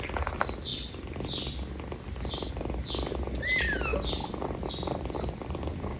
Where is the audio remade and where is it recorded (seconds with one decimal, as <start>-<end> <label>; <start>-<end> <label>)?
0.0-6.0 recorded

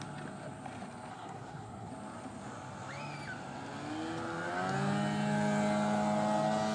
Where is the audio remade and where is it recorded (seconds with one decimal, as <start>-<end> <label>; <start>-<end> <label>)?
0.0-1.1 recorded; 1.1-1.9 remade; 1.9-6.7 recorded

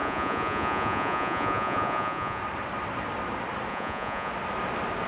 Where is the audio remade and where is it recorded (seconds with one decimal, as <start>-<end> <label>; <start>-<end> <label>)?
0.0-2.4 remade; 2.4-3.7 recorded; 3.7-4.3 remade; 4.3-5.1 recorded

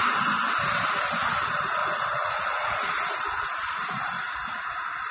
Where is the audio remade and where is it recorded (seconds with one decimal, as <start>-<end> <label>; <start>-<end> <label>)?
0.0-1.8 recorded; 1.8-2.9 remade; 2.9-5.1 recorded

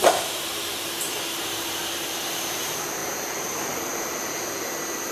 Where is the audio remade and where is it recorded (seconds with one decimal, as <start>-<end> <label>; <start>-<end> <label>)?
0.0-5.1 remade